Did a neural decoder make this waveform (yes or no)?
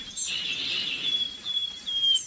no